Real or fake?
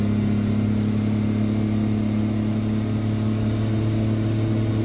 real